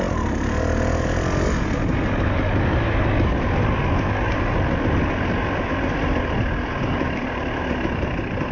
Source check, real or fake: real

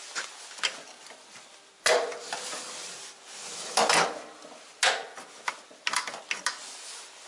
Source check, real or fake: real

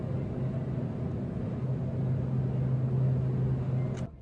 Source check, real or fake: real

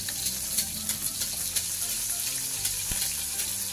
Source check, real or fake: real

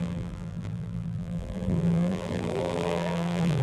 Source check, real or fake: fake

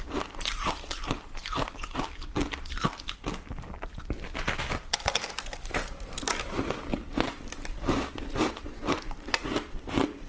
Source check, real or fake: fake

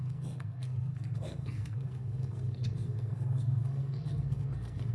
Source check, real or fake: fake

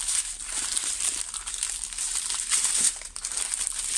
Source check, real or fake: real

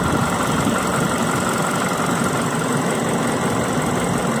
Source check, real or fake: real